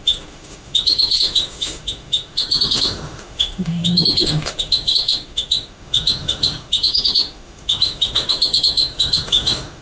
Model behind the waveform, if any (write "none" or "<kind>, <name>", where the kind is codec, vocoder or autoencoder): autoencoder, DAC-VAE